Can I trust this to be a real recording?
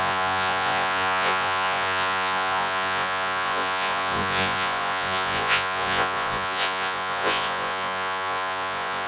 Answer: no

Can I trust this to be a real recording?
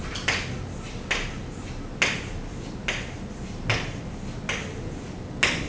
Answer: yes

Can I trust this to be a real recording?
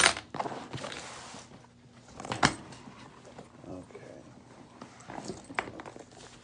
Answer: yes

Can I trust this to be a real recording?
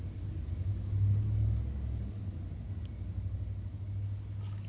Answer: yes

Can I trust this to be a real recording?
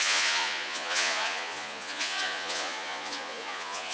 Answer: no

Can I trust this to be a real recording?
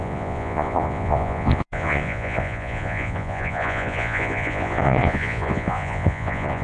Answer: no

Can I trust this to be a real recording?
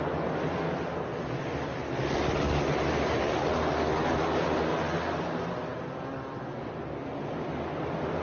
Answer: yes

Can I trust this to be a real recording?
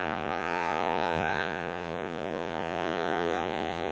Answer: no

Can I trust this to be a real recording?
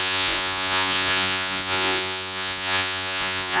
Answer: no